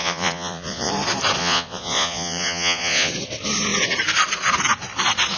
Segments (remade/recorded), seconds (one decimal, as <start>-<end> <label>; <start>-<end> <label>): 0.0-0.9 remade; 0.9-1.4 recorded; 1.4-3.1 remade; 3.1-5.4 recorded